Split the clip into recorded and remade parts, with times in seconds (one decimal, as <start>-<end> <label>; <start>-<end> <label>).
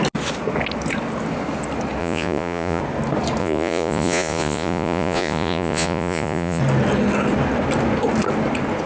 0.0-2.0 recorded; 2.0-2.8 remade; 2.8-3.4 recorded; 3.4-6.6 remade; 6.6-8.9 recorded